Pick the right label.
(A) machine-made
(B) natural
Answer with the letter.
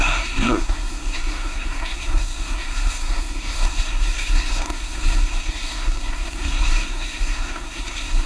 A